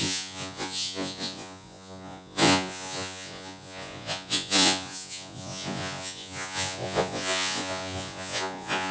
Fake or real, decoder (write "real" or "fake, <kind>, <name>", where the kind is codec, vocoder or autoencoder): fake, vocoder, Vocos